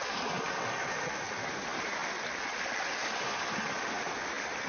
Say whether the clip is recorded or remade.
recorded